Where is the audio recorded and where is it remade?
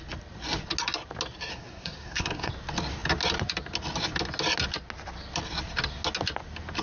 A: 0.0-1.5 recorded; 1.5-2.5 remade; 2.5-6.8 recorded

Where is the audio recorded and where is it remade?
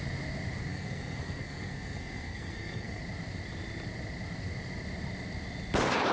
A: 0.0-0.7 recorded; 0.7-3.0 remade; 3.0-6.1 recorded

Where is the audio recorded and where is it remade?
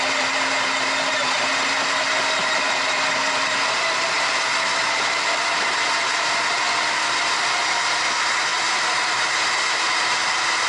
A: 0.0-10.7 recorded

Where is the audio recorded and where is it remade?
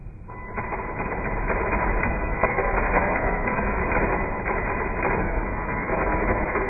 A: 0.0-2.0 recorded; 2.0-3.8 remade; 3.8-5.2 recorded; 5.2-6.7 remade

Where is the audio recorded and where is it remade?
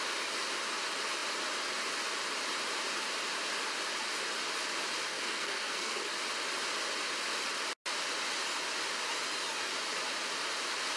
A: 0.0-5.1 recorded; 5.1-6.1 remade; 6.1-11.0 recorded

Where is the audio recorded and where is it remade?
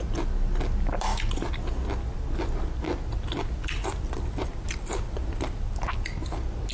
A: 0.0-6.7 recorded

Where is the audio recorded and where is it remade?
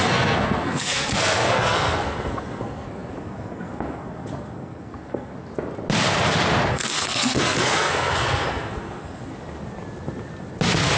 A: 0.0-5.3 remade; 5.3-6.7 recorded; 6.7-9.3 remade; 9.3-11.0 recorded